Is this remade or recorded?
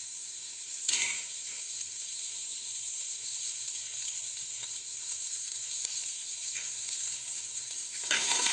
remade